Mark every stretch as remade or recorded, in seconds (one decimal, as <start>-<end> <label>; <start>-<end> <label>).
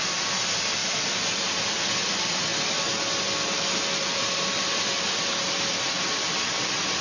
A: 0.0-7.0 recorded